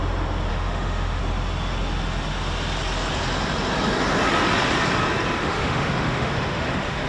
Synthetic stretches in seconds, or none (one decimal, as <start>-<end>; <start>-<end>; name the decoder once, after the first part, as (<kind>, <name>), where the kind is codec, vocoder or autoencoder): 0.5-1.2 (autoencoder, DAC-VAE); 5.4-7.1